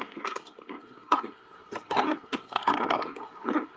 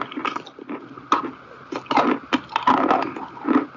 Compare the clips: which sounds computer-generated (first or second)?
first